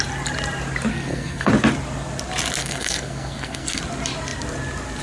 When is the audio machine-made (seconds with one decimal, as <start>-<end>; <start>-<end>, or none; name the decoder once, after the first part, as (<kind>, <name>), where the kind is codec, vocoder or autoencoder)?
0.9-1.5 (codec, SNAC); 2.6-3.8